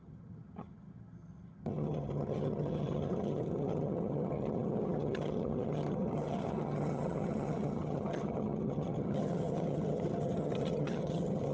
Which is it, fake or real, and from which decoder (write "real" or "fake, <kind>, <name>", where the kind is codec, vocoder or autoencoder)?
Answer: fake, vocoder, HiFi-GAN